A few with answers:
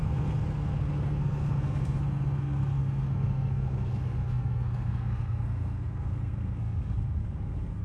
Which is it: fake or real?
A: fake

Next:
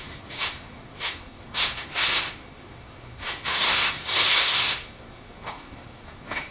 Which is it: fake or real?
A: fake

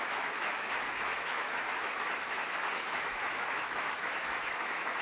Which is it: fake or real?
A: fake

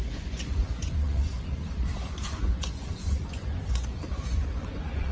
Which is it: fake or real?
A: fake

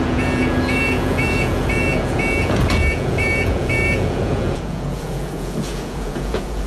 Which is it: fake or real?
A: fake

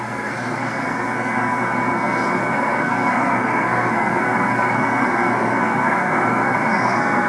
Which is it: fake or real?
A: fake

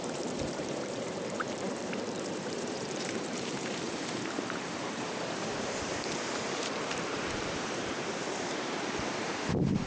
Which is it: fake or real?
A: fake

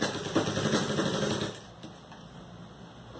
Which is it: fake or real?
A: real